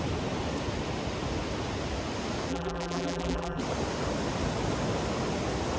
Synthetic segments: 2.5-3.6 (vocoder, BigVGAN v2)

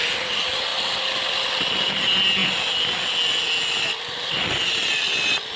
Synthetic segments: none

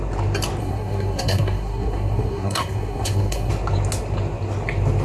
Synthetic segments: 0.6-3.5 (codec, SNAC)

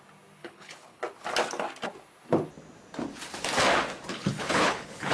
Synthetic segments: 0.4-1.0 (codec, HILCodec); 4.1-5.1

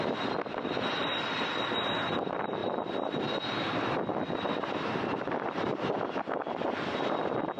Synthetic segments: 0.0-2.6 (vocoder, BigVGAN v2); 5.0-7.6

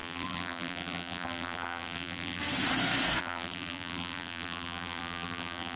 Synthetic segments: 0.0-2.4 (vocoder, BigVGAN v2); 3.2-5.8